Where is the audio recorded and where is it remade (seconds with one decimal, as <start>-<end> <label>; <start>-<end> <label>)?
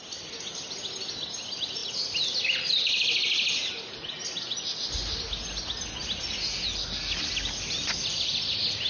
0.0-8.9 recorded